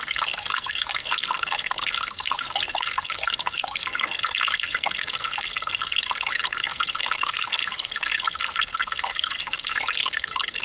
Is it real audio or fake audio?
fake